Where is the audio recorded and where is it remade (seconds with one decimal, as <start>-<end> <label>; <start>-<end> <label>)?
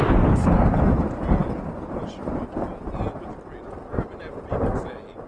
0.0-5.3 recorded